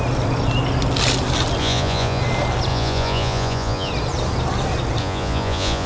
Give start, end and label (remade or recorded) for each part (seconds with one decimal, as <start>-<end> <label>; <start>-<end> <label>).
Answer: 0.0-1.6 recorded; 1.6-2.2 remade; 2.2-2.7 recorded; 2.7-3.9 remade; 3.9-5.0 recorded; 5.0-5.9 remade

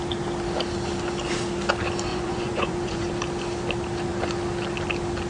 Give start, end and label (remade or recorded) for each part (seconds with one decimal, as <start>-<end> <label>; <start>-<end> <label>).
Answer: 0.0-2.1 recorded; 2.1-3.1 remade; 3.1-5.3 recorded

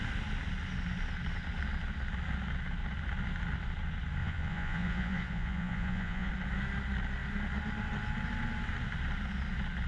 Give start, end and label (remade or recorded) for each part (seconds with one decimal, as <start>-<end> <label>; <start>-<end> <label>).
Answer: 0.0-4.2 recorded; 4.2-6.3 remade; 6.3-9.9 recorded